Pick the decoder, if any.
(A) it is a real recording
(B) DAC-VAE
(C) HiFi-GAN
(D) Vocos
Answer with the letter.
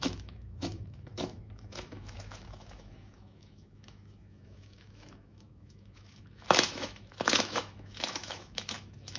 B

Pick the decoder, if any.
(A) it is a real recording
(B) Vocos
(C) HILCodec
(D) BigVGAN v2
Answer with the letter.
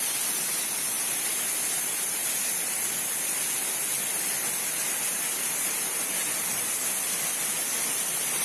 A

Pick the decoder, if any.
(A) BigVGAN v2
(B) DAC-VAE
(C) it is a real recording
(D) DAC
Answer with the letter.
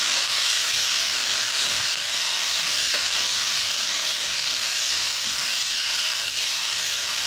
D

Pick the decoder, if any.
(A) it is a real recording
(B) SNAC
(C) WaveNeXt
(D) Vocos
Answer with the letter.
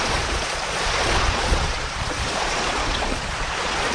D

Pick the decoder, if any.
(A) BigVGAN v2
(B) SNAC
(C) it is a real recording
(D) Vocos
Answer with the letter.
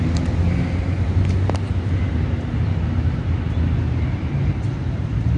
C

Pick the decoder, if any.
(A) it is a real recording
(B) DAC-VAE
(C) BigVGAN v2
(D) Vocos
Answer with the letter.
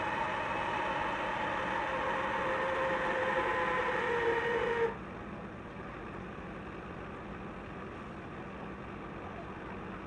A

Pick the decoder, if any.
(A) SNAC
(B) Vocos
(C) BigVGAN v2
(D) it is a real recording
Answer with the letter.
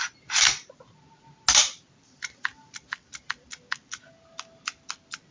D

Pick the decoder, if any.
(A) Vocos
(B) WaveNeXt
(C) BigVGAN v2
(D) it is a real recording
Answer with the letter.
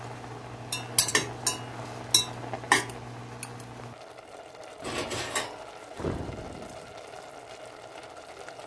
D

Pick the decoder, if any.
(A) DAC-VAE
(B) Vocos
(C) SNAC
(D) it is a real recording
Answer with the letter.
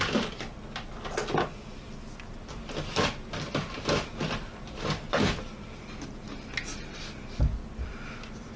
D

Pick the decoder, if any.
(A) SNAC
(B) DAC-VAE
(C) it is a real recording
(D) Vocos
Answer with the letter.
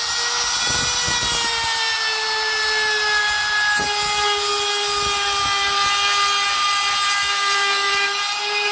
C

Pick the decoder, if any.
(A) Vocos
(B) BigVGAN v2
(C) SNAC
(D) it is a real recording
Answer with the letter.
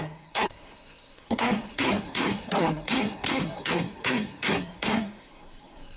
C